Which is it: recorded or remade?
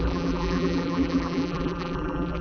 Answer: remade